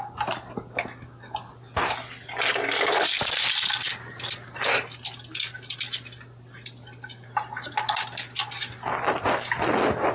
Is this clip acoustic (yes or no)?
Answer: yes